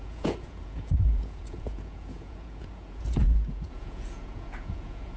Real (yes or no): no